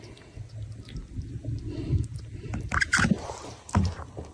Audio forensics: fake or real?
fake